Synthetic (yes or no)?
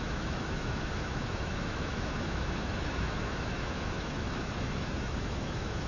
yes